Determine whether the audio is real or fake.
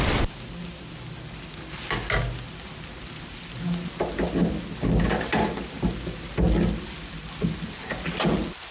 real